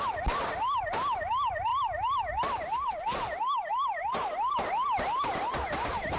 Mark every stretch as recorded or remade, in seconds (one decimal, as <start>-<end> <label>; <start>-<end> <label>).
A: 0.0-6.2 recorded